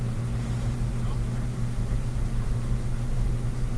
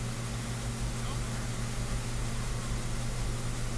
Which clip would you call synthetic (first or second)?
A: first